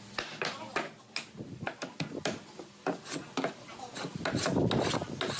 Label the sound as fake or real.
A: real